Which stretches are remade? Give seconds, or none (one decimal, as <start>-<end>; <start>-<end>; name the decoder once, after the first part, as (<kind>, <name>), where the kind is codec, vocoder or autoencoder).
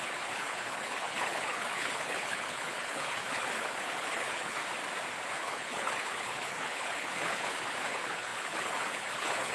0.0-4.6 (codec, HILCodec); 5.3-9.5